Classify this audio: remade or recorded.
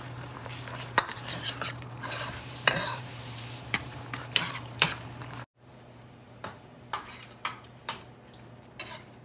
remade